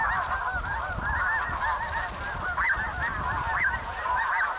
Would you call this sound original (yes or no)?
yes